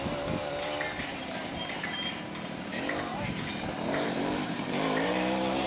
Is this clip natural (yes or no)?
no